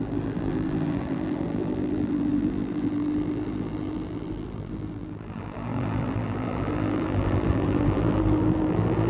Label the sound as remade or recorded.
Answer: remade